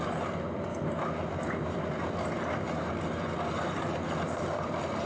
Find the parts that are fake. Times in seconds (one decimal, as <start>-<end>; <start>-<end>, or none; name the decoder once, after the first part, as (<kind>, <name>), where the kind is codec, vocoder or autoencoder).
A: none